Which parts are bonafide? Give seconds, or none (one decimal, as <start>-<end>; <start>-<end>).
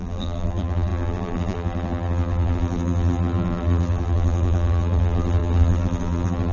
none